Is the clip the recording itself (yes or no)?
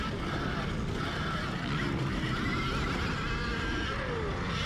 yes